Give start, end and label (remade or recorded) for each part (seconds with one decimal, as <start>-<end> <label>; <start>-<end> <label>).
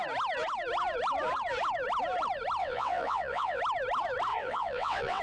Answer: 0.0-2.6 recorded; 2.6-3.6 remade; 3.6-4.3 recorded; 4.3-5.2 remade